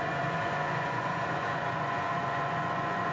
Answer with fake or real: fake